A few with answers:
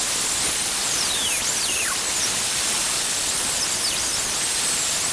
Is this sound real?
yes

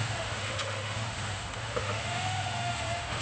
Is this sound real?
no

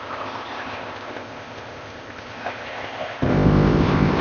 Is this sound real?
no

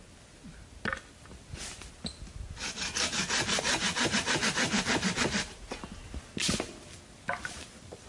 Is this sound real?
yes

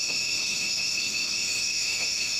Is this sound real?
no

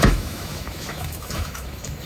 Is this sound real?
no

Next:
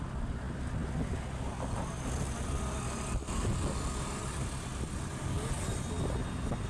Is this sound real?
yes